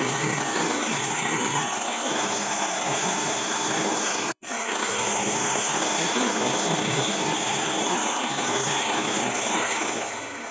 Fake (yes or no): yes